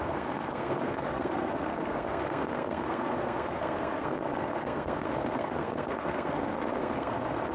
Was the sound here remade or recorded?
remade